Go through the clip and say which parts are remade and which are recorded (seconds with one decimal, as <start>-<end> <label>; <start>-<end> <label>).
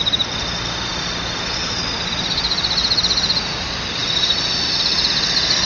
0.0-5.6 recorded